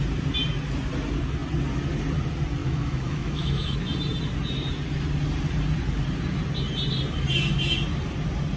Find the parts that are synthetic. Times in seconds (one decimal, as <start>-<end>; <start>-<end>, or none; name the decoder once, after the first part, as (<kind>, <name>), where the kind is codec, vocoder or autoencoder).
2.6-3.8 (autoencoder, DAC-VAE)